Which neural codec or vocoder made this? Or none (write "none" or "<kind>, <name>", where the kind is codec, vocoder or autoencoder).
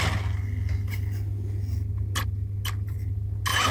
none